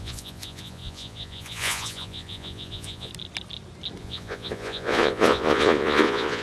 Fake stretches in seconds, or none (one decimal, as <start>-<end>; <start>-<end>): 0.0-3.1; 4.0-6.4

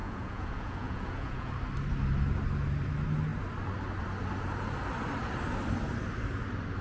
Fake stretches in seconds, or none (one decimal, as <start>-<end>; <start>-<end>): 0.0-1.5

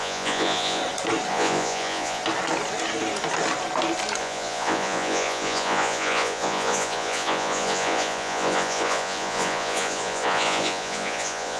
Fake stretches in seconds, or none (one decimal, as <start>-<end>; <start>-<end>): 0.0-0.8; 1.3-2.2; 4.2-11.6

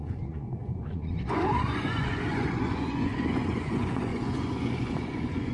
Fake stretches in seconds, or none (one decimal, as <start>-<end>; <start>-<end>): 0.0-5.5

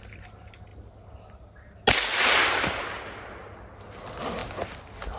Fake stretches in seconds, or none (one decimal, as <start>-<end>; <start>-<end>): none

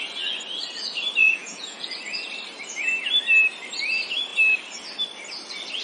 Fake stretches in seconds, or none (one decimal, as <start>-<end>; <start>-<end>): 1.2-1.9

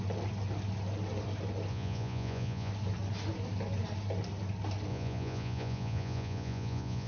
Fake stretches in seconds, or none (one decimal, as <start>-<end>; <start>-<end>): 1.7-2.7; 4.9-7.1